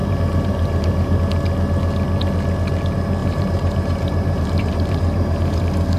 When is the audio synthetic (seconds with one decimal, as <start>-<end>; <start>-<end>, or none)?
0.0-1.2; 3.2-5.6